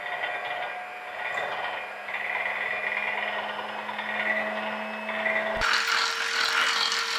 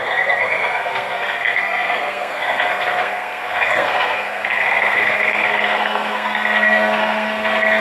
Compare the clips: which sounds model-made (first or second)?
second